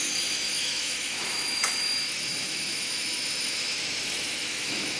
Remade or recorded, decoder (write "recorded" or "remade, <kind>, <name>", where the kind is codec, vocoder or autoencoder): remade, autoencoder, DAC-VAE